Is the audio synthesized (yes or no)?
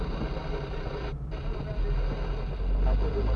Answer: no